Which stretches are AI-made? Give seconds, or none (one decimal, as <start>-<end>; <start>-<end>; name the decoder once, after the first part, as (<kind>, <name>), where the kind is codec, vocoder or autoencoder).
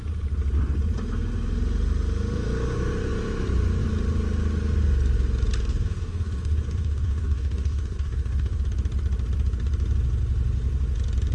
5.7-8.6 (codec, DAC)